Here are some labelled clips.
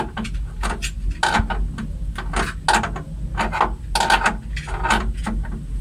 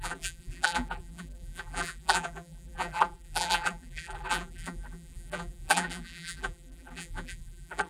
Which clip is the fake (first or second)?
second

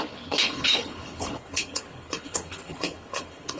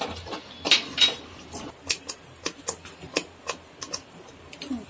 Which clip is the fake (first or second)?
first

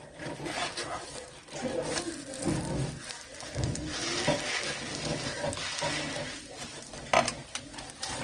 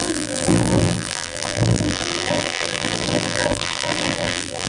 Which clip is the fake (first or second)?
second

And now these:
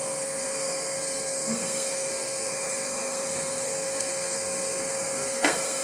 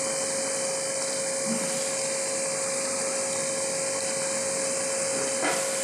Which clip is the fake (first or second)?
first